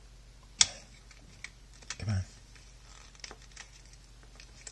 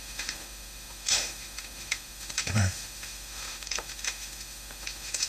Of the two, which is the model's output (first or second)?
second